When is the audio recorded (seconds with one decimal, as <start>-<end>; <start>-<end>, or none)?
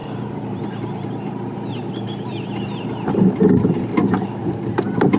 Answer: 3.1-4.4